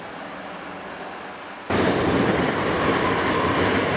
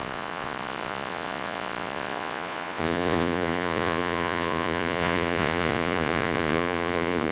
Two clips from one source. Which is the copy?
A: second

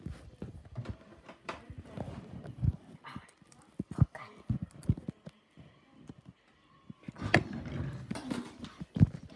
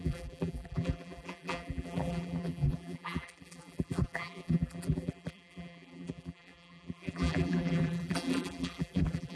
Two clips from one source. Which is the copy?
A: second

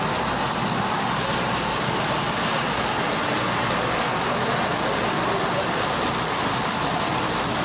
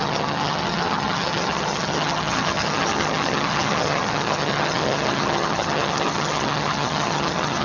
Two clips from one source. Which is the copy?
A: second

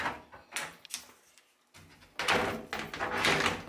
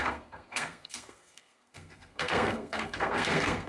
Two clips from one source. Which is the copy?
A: second